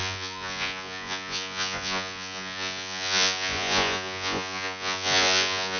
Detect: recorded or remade remade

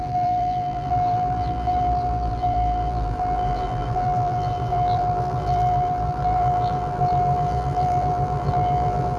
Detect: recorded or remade remade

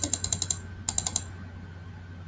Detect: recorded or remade recorded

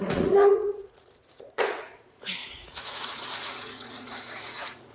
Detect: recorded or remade remade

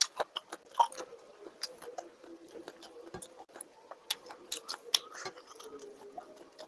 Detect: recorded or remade recorded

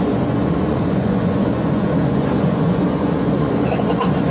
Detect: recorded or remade remade